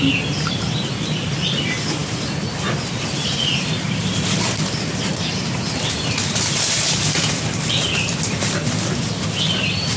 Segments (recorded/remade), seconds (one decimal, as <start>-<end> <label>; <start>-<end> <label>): 0.0-10.0 recorded